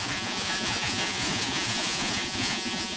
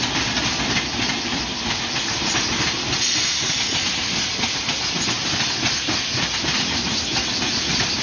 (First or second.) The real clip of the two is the second